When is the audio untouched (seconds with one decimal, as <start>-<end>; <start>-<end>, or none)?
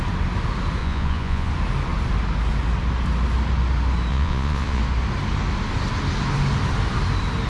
0.0-0.8; 1.5-4.1; 4.8-7.5